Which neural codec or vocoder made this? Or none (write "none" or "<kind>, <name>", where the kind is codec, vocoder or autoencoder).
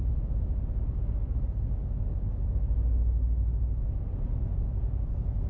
none